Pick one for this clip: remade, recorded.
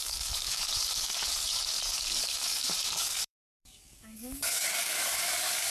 remade